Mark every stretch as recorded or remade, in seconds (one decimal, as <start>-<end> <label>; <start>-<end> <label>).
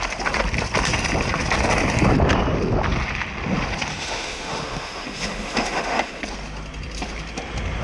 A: 0.0-3.9 recorded; 3.9-6.2 remade; 6.2-7.8 recorded